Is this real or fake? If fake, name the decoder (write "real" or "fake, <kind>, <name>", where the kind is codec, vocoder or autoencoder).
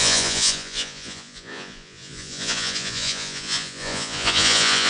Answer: fake, vocoder, Vocos